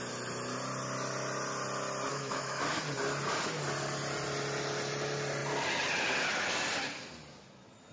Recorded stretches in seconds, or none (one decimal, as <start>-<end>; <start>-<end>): 0.0-2.1; 2.6-7.9